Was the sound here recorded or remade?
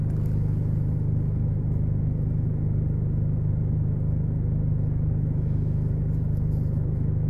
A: recorded